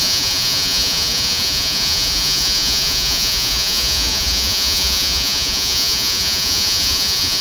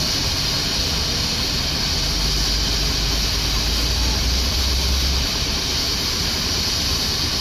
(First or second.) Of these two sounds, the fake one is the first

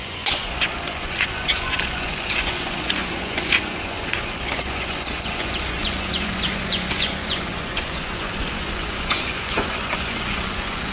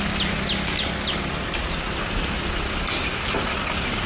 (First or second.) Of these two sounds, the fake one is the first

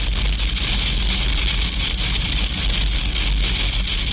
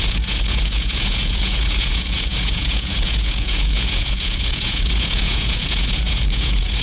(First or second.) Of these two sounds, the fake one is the second